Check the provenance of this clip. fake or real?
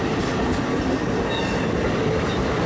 real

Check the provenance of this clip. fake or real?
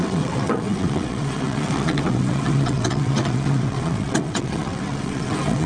fake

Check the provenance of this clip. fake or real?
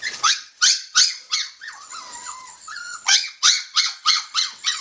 fake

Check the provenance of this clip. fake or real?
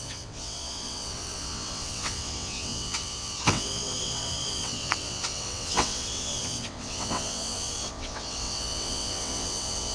fake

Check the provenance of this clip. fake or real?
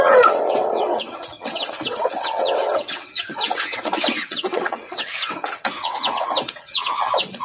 fake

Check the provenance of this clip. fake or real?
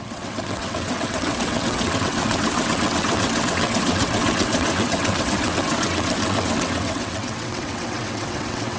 fake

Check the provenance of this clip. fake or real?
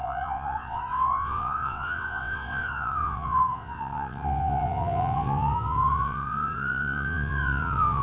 fake